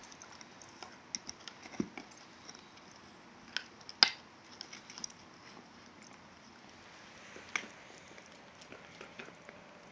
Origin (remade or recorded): recorded